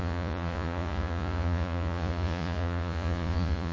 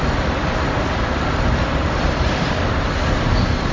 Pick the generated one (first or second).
first